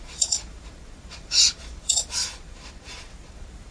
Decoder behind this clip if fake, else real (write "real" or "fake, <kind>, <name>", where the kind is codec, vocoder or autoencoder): fake, vocoder, Vocos